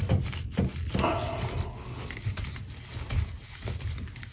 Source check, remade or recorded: recorded